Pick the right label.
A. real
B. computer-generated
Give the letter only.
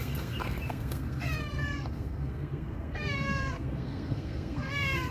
B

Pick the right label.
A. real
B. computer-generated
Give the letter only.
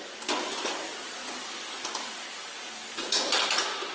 A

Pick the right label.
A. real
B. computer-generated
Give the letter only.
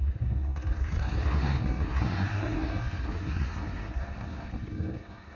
B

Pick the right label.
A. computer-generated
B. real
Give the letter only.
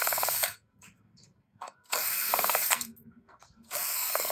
A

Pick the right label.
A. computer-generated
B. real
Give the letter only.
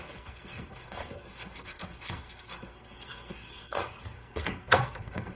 A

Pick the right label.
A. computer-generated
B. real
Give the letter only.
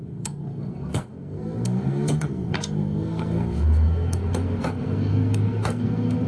A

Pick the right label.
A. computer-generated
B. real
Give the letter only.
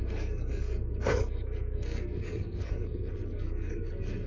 A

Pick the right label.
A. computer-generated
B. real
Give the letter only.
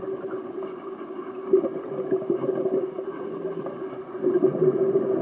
B